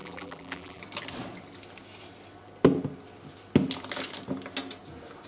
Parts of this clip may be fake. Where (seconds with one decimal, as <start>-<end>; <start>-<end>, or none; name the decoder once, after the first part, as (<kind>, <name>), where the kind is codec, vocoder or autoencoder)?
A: 0.0-0.8 (vocoder, BigVGAN v2)